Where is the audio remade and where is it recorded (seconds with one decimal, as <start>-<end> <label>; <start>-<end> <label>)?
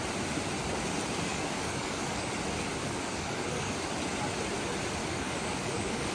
0.0-1.3 recorded; 1.3-2.3 remade; 2.3-2.8 recorded; 2.8-3.9 remade; 3.9-5.0 recorded; 5.0-6.1 remade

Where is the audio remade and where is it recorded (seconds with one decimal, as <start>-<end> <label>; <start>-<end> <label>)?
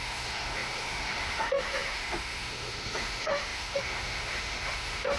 0.0-5.2 remade